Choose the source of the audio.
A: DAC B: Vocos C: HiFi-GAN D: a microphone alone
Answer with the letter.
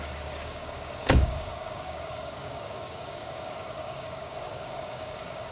A